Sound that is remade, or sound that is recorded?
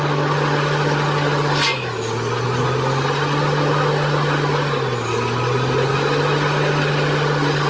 recorded